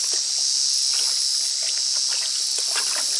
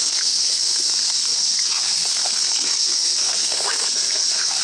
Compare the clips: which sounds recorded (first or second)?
first